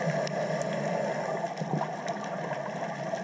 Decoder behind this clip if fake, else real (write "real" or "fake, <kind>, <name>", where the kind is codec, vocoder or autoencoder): real